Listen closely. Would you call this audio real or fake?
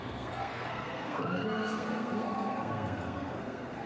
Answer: fake